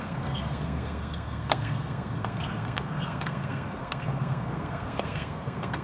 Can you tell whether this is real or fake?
fake